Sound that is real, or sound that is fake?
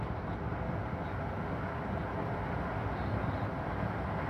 real